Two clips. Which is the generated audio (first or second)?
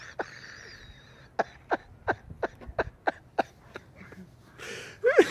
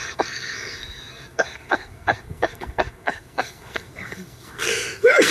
second